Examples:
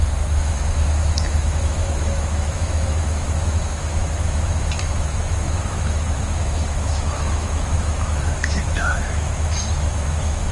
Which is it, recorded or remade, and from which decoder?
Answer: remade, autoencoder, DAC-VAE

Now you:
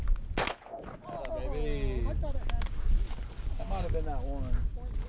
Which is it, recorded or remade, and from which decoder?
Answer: recorded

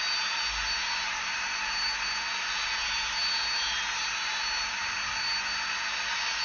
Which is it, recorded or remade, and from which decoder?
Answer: recorded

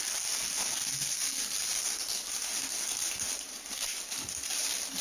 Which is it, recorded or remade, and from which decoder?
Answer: recorded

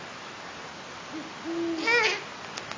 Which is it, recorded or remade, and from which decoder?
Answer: recorded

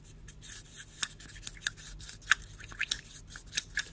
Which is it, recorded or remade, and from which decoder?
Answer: recorded